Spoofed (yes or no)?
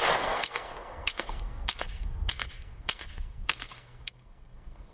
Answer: yes